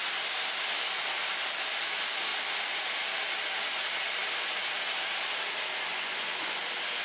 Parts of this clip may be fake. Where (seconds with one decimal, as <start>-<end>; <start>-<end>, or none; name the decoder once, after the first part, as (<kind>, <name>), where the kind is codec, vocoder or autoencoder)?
5.9-6.6 (vocoder, Vocos)